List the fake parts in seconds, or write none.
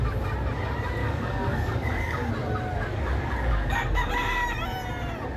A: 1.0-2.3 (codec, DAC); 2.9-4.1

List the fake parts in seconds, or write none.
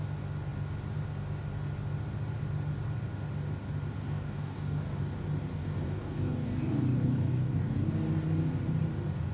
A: 4.0-5.0 (codec, DAC); 5.5-7.9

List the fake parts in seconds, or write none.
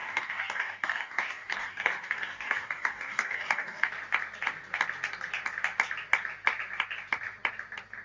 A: 0.0-3.9 (codec, DAC)